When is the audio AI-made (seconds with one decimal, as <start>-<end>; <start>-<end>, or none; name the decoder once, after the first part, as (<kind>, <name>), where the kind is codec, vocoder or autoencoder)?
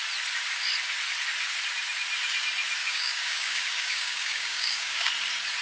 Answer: 2.8-5.1 (codec, DAC)